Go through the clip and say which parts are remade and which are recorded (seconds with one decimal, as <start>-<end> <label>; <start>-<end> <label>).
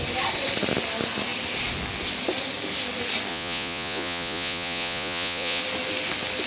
0.0-3.3 recorded; 3.3-5.6 remade; 5.6-6.5 recorded